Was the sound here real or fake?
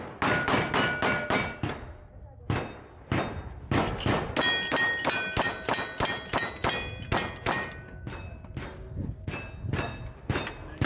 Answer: real